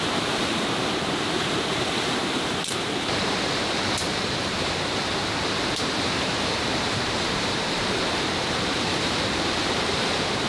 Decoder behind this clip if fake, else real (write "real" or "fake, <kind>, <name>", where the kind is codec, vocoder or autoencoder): fake, vocoder, BigVGAN v2